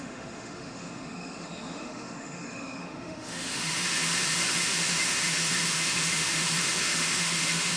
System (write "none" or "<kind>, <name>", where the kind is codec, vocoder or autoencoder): autoencoder, DAC-VAE